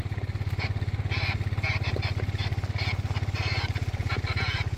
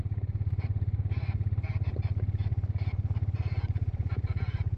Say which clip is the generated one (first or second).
second